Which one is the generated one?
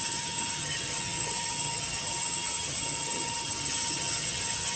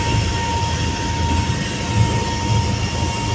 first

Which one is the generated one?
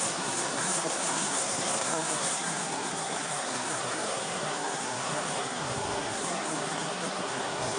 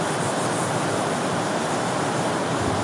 first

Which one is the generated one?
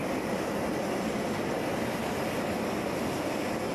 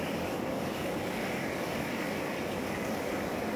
second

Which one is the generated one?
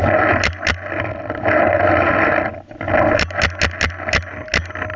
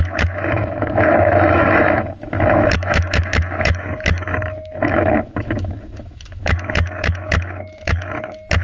second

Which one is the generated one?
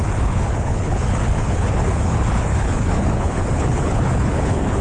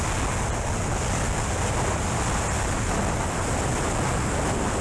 first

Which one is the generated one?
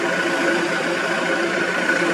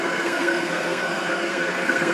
second